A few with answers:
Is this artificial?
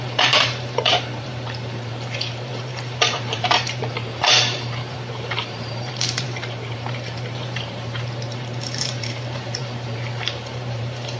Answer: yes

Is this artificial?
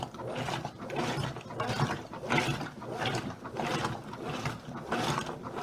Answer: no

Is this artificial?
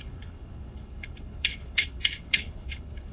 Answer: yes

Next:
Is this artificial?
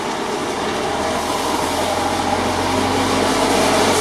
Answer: no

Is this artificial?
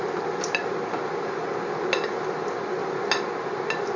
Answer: no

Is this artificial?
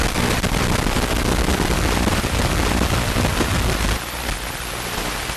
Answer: no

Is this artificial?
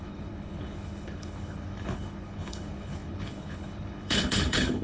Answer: yes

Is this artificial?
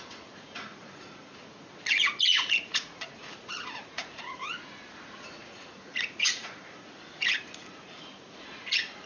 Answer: yes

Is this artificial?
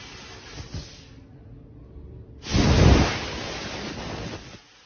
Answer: no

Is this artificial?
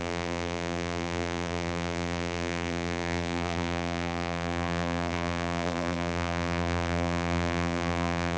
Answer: yes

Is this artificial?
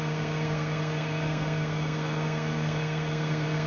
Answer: yes